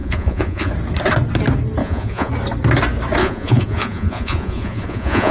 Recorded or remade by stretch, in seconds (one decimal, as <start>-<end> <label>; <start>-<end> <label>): 0.0-0.7 remade; 0.7-1.8 recorded; 1.8-2.3 remade; 2.3-3.2 recorded; 3.2-5.3 remade